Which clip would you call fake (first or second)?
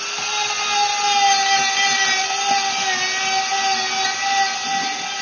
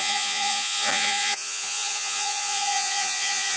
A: second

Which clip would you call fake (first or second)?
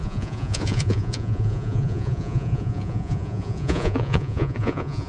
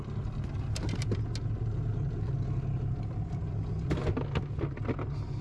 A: first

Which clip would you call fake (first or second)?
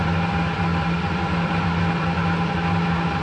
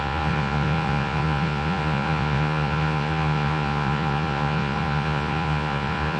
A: second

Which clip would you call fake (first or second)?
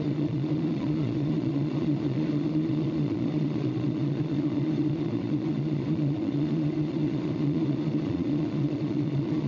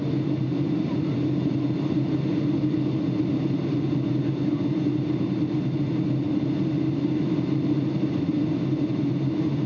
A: first